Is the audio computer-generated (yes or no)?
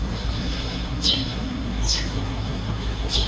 yes